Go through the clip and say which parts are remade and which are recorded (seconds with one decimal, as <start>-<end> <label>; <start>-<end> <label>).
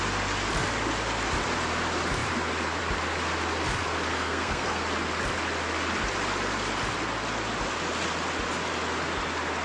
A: 0.0-4.1 recorded; 4.1-4.8 remade; 4.8-9.6 recorded